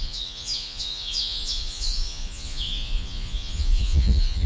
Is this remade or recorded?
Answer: remade